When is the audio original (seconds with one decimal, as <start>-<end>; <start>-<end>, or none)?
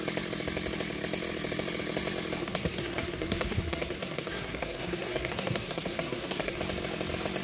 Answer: 0.0-2.4; 6.6-7.4